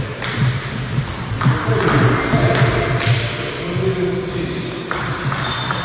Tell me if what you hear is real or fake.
real